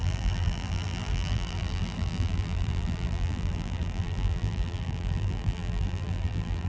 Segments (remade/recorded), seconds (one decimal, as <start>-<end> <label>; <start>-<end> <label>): 0.0-6.7 remade